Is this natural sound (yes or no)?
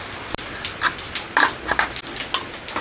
yes